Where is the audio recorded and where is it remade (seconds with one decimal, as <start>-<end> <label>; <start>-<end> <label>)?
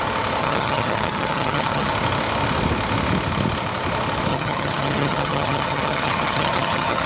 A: 0.0-0.4 recorded; 0.4-1.9 remade; 1.9-4.3 recorded; 4.3-7.1 remade